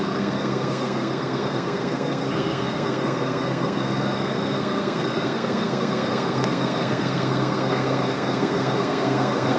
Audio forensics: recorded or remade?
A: remade